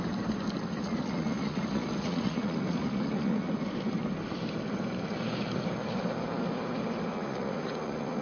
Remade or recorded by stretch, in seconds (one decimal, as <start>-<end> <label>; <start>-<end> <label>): 0.0-0.6 recorded; 0.6-3.5 remade; 3.5-7.1 recorded; 7.1-8.2 remade